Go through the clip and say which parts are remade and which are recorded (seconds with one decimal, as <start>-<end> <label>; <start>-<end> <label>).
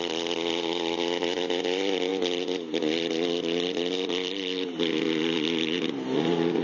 0.0-6.6 recorded